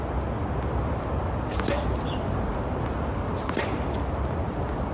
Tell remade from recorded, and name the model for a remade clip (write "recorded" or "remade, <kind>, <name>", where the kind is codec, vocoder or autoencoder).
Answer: recorded